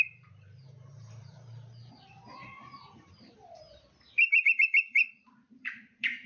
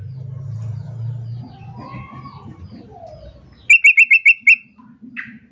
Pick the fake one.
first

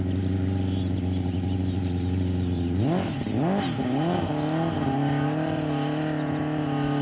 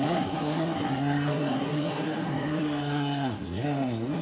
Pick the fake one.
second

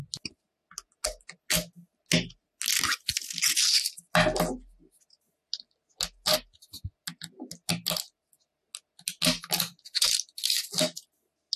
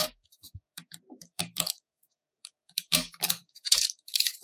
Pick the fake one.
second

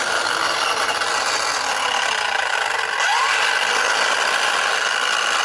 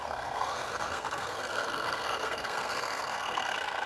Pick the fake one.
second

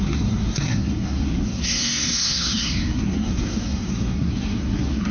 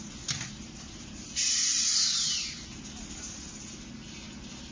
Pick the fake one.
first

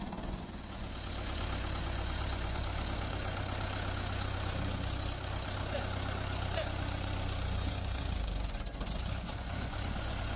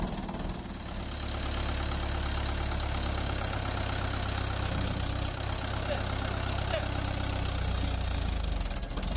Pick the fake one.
first